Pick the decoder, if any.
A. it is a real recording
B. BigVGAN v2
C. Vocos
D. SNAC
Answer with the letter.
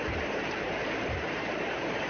B